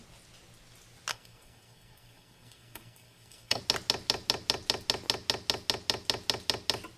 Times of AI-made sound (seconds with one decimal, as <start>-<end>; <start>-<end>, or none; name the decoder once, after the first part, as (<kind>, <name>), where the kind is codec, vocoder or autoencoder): 1.1-3.6 (codec, SNAC)